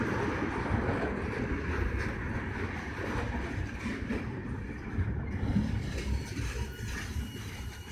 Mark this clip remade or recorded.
recorded